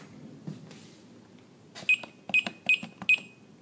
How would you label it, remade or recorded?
recorded